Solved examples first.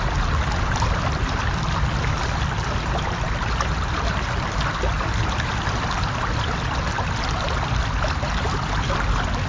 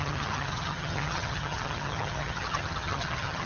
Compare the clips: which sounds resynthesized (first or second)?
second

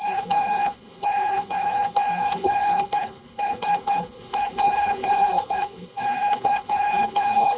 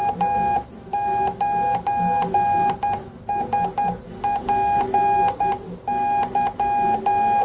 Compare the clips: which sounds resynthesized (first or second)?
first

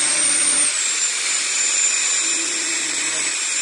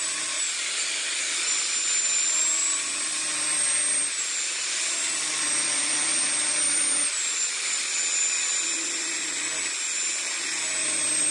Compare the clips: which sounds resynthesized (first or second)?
first